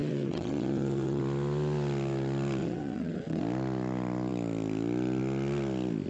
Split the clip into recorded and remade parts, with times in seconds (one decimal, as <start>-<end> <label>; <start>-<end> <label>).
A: 0.0-1.2 remade; 1.2-2.6 recorded; 2.6-3.4 remade; 3.4-6.1 recorded